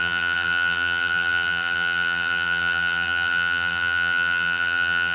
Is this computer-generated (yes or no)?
yes